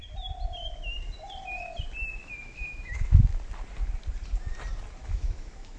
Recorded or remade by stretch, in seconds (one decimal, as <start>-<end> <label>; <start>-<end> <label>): 0.0-2.2 recorded; 2.2-3.2 remade; 3.2-5.0 recorded; 5.0-5.8 remade